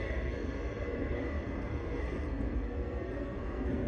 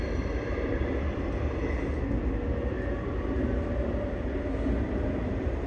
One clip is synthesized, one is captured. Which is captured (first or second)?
second